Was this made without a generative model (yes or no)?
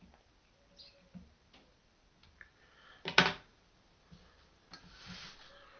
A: yes